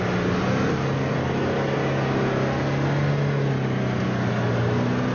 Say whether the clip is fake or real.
real